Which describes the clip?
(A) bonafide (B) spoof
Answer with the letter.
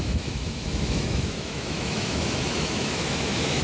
B